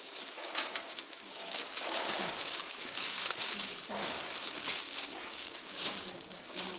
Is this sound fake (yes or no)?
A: yes